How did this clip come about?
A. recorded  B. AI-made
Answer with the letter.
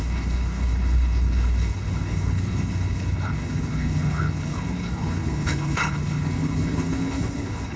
B